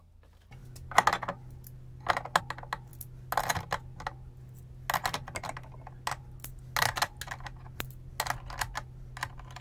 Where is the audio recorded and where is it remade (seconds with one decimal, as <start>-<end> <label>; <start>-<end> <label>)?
0.0-9.6 recorded